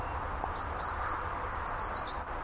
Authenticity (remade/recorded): recorded